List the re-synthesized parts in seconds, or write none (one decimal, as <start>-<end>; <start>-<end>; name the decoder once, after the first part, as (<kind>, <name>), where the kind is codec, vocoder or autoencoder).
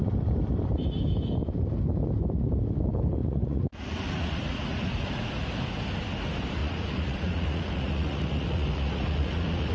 3.2-5.3 (vocoder, Vocos); 6.6-9.7